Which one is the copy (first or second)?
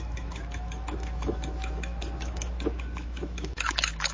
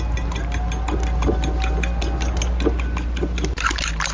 first